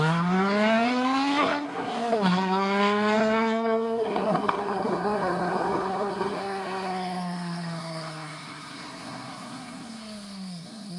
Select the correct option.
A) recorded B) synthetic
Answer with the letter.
B